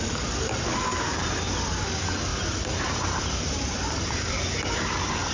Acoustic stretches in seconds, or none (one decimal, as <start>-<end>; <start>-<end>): 0.0-0.9; 1.5-2.3; 4.3-5.3